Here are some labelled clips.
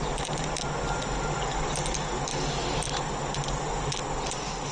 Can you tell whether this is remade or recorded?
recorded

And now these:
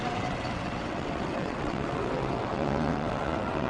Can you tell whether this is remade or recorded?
remade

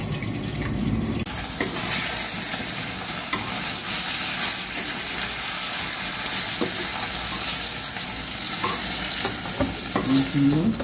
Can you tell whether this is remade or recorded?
recorded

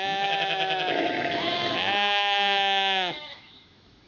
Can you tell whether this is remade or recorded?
remade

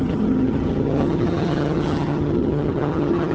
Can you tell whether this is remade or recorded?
remade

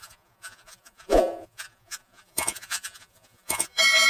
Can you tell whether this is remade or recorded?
remade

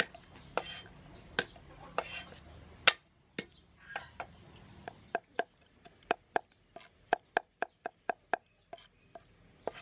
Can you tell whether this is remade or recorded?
recorded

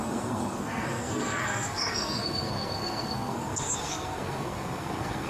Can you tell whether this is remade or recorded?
remade